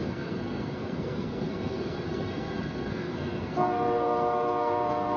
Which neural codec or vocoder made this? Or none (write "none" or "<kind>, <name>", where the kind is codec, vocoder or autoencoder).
codec, SNAC